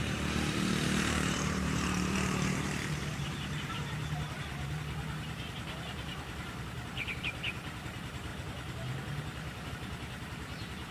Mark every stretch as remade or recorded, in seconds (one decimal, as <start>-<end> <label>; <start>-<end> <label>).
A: 0.0-8.3 remade; 8.3-9.7 recorded; 9.7-10.9 remade

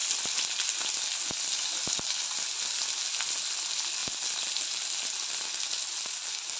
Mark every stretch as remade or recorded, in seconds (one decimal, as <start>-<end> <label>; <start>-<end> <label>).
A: 0.0-6.6 recorded

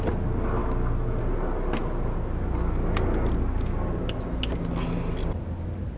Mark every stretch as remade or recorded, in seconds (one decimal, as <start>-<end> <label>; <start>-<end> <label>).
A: 0.0-6.0 recorded

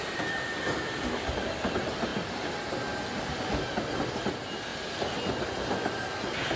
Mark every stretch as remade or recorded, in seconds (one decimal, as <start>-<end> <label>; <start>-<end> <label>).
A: 0.0-6.6 recorded

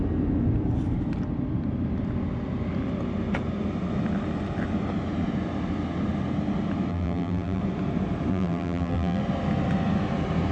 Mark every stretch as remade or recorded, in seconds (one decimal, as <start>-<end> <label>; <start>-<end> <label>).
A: 0.0-6.9 recorded; 6.9-7.6 remade; 7.6-8.3 recorded; 8.3-9.2 remade; 9.2-10.5 recorded

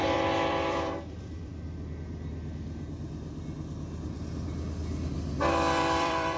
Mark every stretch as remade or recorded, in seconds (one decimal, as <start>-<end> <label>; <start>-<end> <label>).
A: 0.0-1.5 remade; 1.5-5.3 recorded; 5.3-6.4 remade